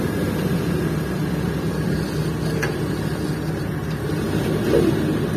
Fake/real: real